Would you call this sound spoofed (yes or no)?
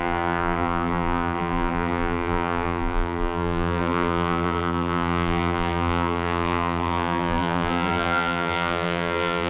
yes